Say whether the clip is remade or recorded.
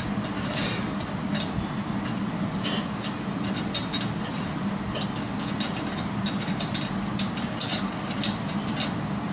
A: recorded